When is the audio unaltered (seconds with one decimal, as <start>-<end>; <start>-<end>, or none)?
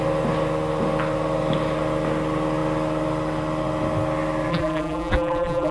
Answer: 0.0-4.5